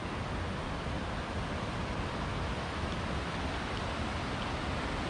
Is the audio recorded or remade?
recorded